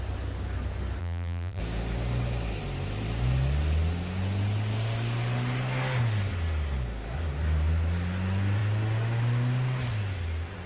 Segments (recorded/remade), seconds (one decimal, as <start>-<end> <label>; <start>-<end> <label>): 0.0-1.0 recorded; 1.0-1.6 remade; 1.6-10.7 recorded